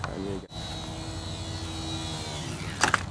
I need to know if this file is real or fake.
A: real